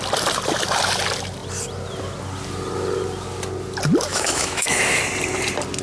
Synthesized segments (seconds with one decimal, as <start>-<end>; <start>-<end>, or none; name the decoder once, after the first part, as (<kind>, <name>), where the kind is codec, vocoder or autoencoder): 4.1-5.0 (autoencoder, DAC-VAE)